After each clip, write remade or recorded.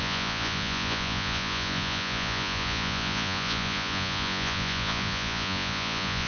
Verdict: remade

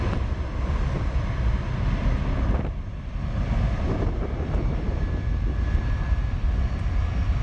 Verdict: recorded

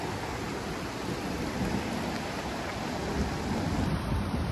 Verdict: recorded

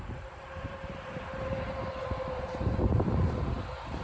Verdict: remade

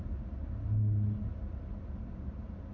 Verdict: recorded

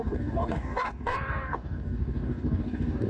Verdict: remade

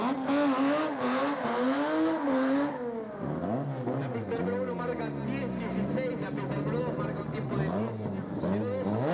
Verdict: recorded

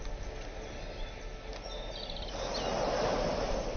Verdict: recorded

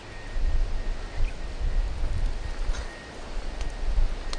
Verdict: recorded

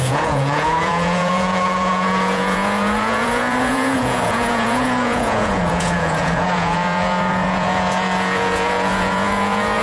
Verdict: remade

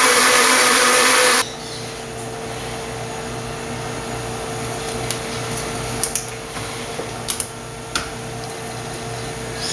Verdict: recorded